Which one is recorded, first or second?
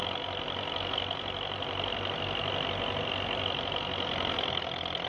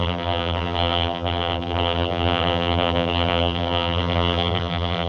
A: first